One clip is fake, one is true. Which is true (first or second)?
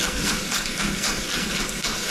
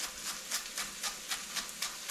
second